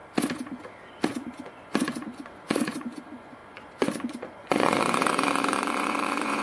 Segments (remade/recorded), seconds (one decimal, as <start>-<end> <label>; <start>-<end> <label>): 0.0-1.1 recorded; 1.1-6.4 remade